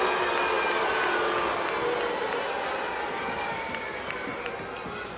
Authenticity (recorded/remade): recorded